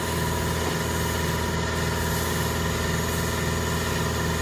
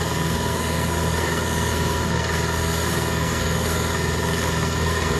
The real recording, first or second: first